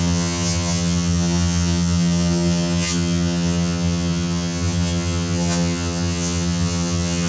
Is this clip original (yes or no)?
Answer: no